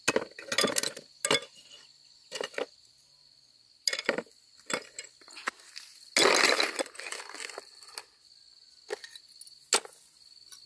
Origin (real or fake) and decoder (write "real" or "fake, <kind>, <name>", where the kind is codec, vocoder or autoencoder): real